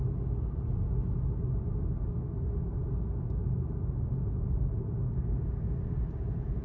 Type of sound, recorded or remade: recorded